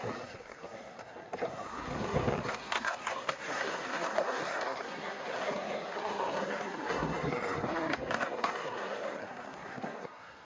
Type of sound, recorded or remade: remade